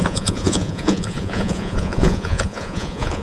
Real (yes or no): no